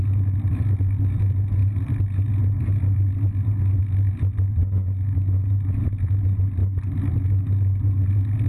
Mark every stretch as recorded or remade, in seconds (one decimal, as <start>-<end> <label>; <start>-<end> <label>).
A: 0.0-8.5 recorded